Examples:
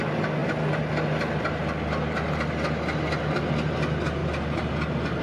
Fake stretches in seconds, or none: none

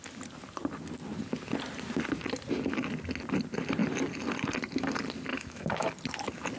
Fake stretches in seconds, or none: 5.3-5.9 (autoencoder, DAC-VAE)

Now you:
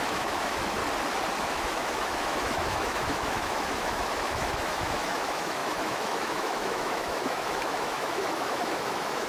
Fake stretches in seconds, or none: 0.0-0.8 (autoencoder, DAC-VAE); 1.4-9.3

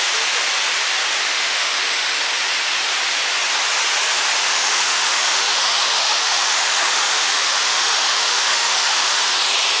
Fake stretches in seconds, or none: 1.3-2.2 (autoencoder, DAC-VAE); 4.4-9.2